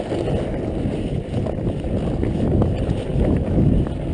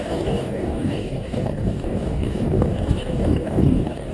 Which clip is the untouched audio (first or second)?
first